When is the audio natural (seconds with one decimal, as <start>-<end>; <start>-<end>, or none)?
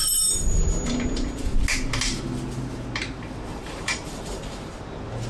0.7-3.5; 4.8-5.3